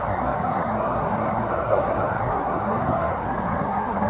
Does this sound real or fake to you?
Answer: fake